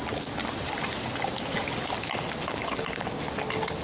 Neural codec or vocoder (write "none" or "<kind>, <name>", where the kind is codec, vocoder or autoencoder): none